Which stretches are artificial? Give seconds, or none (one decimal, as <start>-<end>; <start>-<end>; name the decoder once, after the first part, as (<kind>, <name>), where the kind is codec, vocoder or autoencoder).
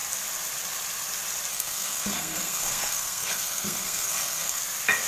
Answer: 1.5-4.6 (codec, SNAC)